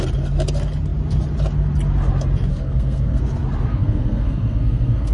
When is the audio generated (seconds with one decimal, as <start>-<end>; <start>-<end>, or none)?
2.5-3.2; 3.7-5.1